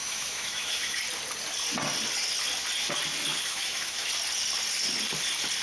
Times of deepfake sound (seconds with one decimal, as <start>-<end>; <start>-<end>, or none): 0.0-1.0; 3.3-4.1